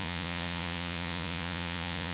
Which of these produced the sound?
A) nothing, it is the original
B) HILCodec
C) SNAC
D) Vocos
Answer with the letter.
D